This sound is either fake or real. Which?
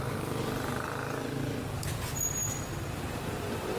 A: real